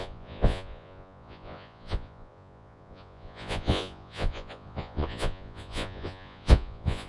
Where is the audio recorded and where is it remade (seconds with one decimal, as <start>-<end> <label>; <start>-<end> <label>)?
0.0-7.1 remade